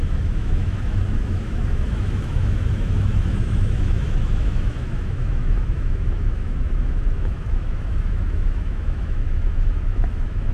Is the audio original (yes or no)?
no